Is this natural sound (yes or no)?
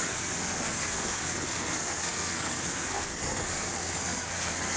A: no